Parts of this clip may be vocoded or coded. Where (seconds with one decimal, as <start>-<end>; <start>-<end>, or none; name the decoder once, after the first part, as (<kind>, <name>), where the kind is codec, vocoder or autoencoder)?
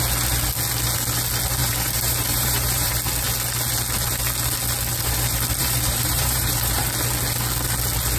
1.6-2.9 (vocoder, BigVGAN v2); 5.6-6.8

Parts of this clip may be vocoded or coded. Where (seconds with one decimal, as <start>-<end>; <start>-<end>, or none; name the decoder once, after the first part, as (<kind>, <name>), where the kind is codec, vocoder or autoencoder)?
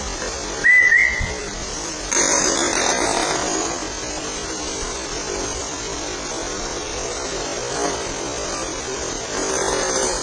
1.4-1.9 (vocoder, BigVGAN v2); 2.9-7.3; 8.3-9.2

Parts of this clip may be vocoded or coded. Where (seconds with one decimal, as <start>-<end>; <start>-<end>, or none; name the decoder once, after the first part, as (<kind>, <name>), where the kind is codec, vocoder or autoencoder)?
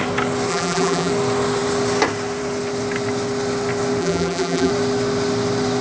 0.5-1.1 (vocoder, BigVGAN v2); 4.0-4.7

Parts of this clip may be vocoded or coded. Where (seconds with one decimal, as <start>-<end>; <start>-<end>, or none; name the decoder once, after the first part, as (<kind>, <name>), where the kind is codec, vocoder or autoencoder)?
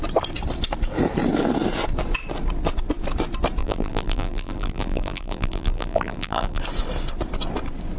3.6-6.6 (vocoder, BigVGAN v2)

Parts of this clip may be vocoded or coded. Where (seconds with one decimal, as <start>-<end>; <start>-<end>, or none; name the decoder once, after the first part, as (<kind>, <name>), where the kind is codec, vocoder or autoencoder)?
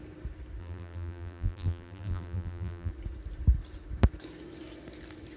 0.6-2.9 (vocoder, BigVGAN v2)